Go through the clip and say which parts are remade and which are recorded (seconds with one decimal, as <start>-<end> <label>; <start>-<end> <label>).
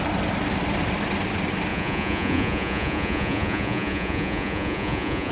0.0-1.7 recorded; 1.7-5.3 remade